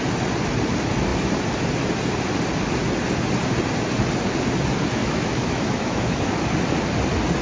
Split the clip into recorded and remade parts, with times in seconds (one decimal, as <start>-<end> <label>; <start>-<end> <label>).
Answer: 0.0-5.0 recorded; 5.0-6.4 remade; 6.4-7.4 recorded